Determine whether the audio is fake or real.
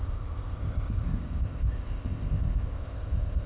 fake